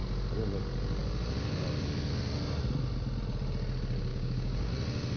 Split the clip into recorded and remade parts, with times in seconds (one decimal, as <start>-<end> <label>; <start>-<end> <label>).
0.0-4.1 recorded; 4.1-4.7 remade; 4.7-5.2 recorded

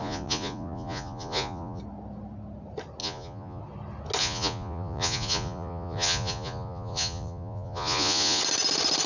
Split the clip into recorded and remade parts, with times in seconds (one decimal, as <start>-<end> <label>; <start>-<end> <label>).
0.0-1.8 remade; 1.8-3.0 recorded; 3.0-3.6 remade; 3.6-4.2 recorded; 4.2-8.4 remade; 8.4-9.1 recorded

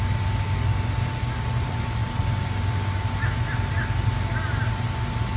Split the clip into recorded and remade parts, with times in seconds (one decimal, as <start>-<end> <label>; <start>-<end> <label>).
0.0-5.4 recorded

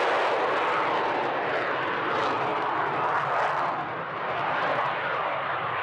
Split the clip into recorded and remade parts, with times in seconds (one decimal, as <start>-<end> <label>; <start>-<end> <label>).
0.0-5.8 recorded

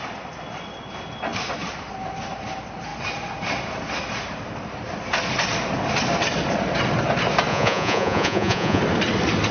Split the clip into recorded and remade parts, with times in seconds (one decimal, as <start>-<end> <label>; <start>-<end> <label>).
0.0-7.5 recorded; 7.5-8.8 remade; 8.8-9.5 recorded

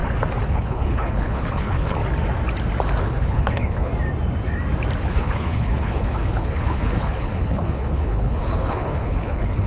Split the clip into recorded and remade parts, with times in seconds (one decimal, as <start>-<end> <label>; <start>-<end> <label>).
0.0-0.5 recorded; 0.5-2.0 remade; 2.0-3.0 recorded; 3.0-3.9 remade; 3.9-5.1 recorded; 5.1-9.7 remade